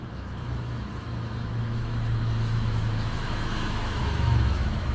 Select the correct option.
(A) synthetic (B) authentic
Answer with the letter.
A